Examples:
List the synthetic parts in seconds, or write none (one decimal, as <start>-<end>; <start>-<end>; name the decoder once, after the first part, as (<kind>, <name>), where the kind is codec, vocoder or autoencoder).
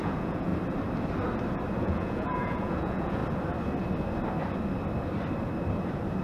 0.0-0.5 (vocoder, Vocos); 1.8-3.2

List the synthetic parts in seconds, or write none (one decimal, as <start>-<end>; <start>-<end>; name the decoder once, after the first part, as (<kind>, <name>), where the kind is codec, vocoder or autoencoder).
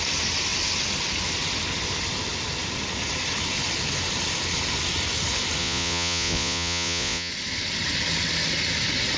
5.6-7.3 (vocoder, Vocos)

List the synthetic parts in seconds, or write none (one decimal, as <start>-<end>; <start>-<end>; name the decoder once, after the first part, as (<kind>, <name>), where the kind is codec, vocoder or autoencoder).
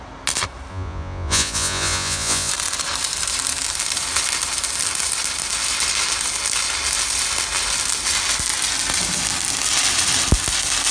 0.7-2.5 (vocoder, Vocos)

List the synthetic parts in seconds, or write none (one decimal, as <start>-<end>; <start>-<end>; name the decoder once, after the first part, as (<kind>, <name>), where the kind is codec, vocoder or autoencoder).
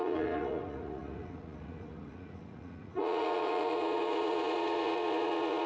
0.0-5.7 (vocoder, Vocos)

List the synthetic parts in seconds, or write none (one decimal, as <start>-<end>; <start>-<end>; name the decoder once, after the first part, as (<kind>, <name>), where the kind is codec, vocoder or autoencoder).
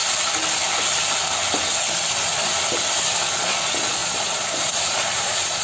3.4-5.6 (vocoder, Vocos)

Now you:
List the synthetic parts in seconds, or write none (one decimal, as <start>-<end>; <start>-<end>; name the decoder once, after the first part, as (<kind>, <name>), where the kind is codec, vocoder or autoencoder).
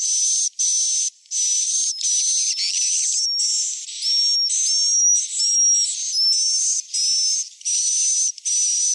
none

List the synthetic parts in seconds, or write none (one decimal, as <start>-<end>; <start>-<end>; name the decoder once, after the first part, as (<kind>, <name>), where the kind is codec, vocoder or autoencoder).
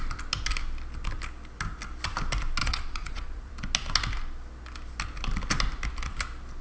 2.6-3.5 (vocoder, Vocos)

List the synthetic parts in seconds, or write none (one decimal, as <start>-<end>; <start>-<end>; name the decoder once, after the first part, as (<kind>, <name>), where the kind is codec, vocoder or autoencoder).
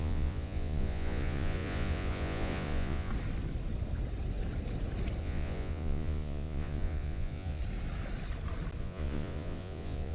0.0-3.1 (vocoder, Vocos); 5.2-7.6; 8.8-10.1